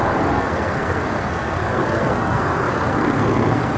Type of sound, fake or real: fake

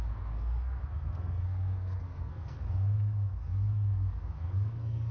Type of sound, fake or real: fake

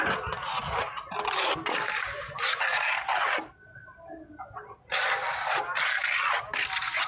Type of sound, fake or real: real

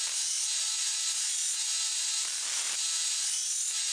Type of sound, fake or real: real